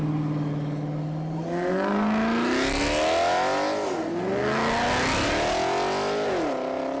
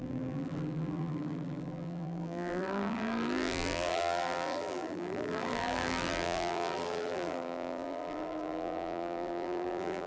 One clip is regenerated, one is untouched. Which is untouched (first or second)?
first